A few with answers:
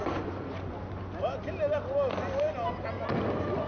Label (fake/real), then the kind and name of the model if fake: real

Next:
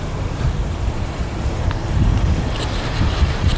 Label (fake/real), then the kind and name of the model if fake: fake, vocoder, BigVGAN v2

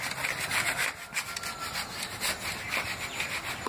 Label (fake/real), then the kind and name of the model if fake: real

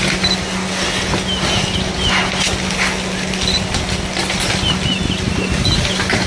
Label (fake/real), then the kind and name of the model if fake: real